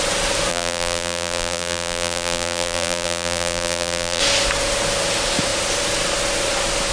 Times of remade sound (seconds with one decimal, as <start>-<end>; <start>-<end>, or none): 0.5-4.2